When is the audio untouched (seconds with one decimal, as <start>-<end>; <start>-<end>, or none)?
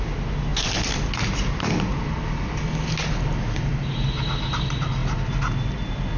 0.0-6.2